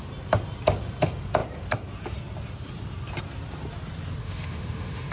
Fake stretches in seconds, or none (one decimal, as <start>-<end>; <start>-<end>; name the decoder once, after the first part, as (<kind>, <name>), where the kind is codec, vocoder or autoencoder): 4.2-5.1 (autoencoder, DAC-VAE)